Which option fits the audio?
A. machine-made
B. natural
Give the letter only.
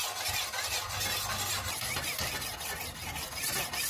B